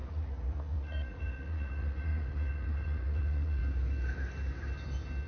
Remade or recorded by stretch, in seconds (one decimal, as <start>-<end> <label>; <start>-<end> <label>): 0.0-3.6 remade; 3.6-5.3 recorded